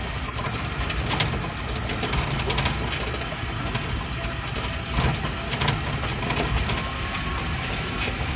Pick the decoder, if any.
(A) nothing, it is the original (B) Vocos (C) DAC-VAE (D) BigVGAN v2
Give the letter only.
A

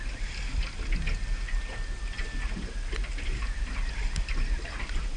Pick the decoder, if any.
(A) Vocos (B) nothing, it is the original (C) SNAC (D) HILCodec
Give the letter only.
B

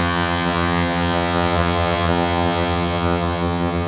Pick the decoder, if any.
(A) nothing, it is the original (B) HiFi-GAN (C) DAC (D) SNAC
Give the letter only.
B